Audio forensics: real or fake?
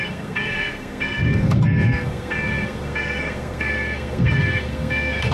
fake